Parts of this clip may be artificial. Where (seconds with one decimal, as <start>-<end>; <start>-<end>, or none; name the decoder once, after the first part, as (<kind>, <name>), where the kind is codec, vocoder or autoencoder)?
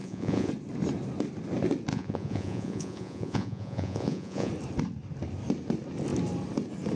0.0-0.5 (vocoder, Vocos); 1.9-4.5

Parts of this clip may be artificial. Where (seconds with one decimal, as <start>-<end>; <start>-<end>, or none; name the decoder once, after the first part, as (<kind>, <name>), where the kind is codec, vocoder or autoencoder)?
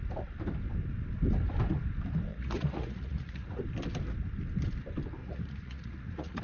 2.3-3.6 (vocoder, Vocos); 5.2-6.4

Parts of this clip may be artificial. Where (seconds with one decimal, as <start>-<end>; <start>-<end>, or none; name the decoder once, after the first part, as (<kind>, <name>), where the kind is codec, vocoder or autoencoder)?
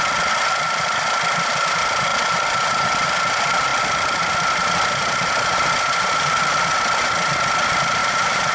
8.0-8.5 (vocoder, BigVGAN v2)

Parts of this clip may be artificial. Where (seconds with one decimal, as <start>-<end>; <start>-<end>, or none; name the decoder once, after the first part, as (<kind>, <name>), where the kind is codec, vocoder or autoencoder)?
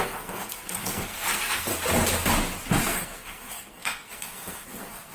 0.0-1.7 (codec, SNAC); 2.8-5.1